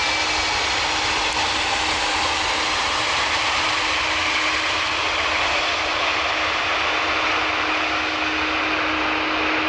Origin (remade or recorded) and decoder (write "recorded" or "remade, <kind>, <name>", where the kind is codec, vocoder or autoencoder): recorded